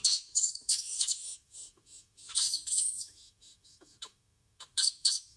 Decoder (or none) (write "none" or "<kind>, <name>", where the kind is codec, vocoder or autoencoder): autoencoder, DAC-VAE